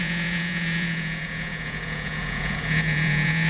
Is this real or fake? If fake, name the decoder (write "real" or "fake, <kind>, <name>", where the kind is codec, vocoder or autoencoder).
fake, vocoder, Vocos